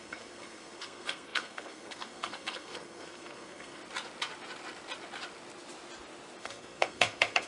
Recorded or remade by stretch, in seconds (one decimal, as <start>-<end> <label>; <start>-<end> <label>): 0.0-3.8 remade; 3.8-6.4 recorded; 6.4-7.5 remade